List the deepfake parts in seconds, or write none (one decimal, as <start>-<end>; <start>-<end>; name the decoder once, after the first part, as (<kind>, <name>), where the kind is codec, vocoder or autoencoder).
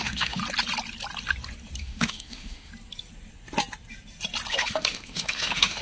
0.0-0.4 (autoencoder, DAC-VAE); 1.8-2.7; 4.5-5.8